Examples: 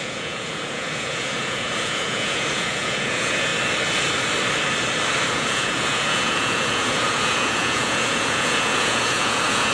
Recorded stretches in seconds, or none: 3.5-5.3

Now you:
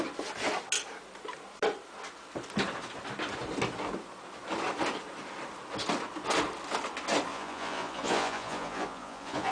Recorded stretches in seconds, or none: 0.0-7.3

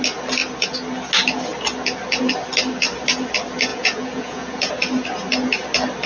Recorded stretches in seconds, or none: 0.0-3.7; 4.7-6.1

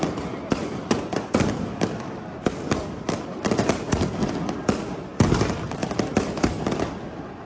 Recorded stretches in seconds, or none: 0.0-0.6; 1.4-7.5

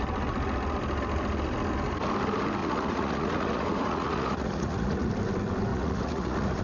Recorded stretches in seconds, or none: 0.0-2.6; 5.1-5.7

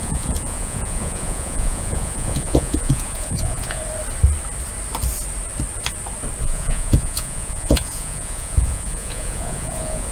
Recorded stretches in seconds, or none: 3.8-6.4